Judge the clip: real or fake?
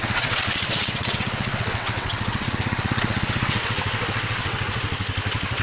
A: fake